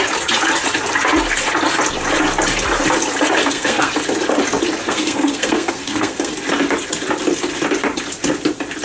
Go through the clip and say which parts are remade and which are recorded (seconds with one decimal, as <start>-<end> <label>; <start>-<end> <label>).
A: 0.0-3.4 recorded; 3.4-3.9 remade; 3.9-4.8 recorded; 4.8-6.3 remade; 6.3-8.8 recorded